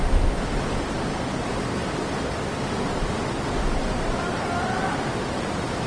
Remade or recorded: recorded